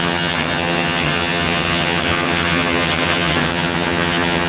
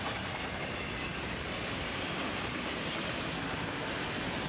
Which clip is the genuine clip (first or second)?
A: second